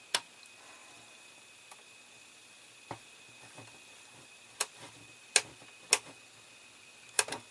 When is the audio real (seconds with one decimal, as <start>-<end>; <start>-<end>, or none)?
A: 0.0-0.8; 5.3-7.5